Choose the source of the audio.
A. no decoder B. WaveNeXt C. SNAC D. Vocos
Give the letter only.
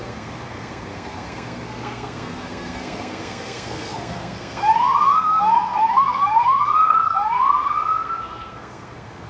C